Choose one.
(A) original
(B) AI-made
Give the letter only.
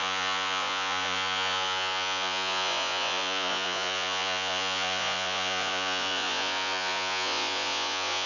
B